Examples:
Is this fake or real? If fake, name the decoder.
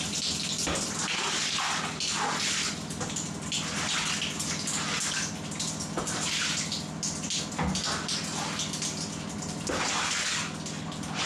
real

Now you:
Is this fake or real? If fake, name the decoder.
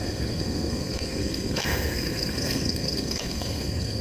fake, codec, SNAC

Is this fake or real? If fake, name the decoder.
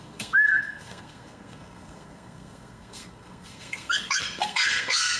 fake, codec, SNAC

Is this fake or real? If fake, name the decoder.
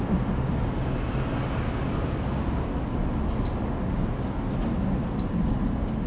real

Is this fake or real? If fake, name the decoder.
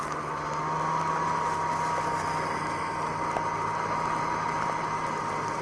real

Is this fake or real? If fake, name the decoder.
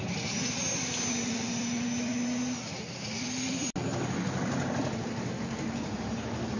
real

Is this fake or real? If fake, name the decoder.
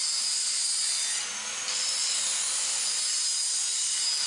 real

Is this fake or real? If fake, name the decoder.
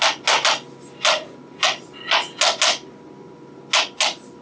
real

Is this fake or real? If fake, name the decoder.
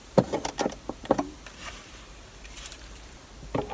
fake, vocoder, BigVGAN v2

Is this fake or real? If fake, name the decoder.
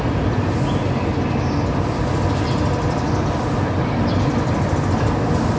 real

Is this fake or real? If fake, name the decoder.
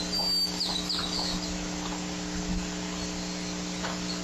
real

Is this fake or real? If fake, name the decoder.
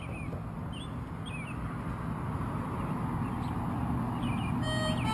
real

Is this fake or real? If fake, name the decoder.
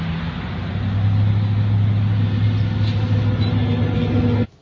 real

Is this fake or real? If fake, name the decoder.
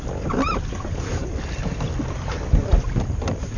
real